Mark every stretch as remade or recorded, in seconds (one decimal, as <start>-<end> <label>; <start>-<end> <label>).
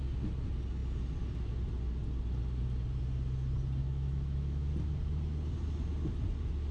0.0-3.8 recorded; 3.8-4.7 remade; 4.7-6.7 recorded